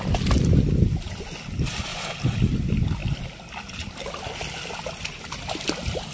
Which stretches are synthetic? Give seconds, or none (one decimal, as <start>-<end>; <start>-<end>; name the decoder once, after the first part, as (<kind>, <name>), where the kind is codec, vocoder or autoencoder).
none